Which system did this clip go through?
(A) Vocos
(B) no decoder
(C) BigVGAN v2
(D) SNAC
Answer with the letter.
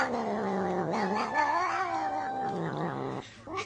B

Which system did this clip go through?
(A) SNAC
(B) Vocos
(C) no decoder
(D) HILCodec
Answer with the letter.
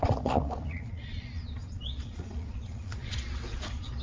B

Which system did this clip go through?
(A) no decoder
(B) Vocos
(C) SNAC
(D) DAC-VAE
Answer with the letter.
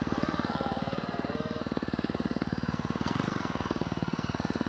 C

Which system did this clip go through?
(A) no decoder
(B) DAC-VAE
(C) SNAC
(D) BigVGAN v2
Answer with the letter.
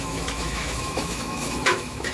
B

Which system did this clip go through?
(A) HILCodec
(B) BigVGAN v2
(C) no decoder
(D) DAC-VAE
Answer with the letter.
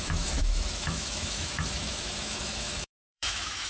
D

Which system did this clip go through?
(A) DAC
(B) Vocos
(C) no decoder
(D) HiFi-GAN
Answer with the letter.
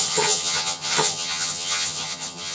D